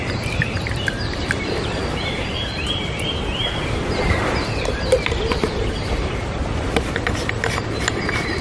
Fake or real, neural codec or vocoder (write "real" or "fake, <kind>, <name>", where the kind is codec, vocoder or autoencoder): fake, vocoder, BigVGAN v2